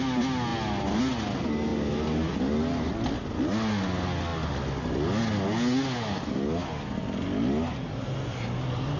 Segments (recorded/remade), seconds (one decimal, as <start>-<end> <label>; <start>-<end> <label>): 0.0-9.0 recorded